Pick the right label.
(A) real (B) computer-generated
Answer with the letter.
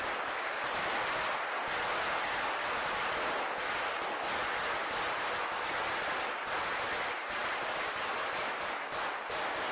A